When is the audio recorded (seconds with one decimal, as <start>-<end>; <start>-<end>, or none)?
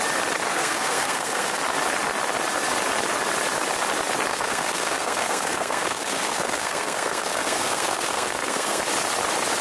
0.0-0.5; 1.6-4.3; 8.8-9.6